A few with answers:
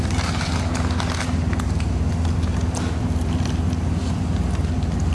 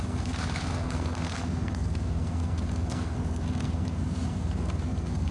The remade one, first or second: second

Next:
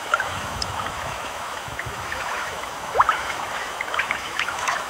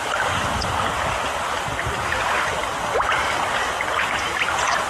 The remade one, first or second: first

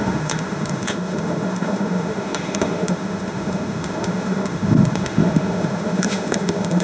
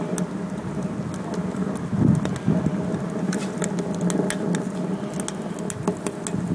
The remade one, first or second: first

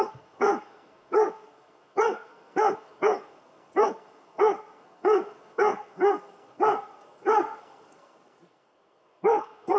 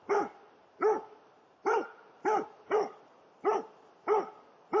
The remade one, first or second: first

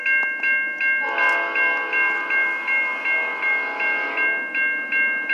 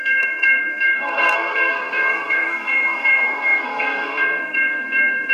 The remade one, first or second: second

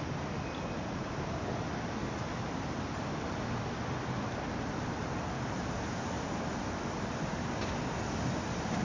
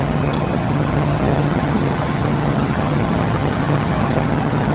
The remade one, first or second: second